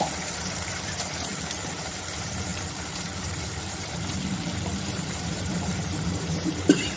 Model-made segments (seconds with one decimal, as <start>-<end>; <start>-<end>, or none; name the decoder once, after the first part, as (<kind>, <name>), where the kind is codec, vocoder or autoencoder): 0.0-7.0 (vocoder, BigVGAN v2)

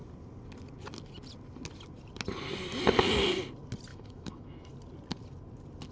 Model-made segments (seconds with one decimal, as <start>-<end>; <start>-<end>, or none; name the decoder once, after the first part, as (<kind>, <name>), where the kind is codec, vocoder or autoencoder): 3.9-4.7 (autoencoder, DAC-VAE)